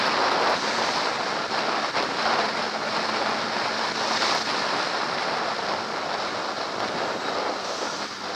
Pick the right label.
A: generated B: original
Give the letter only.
B